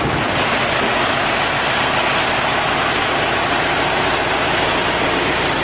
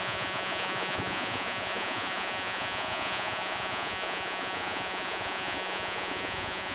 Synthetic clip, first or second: second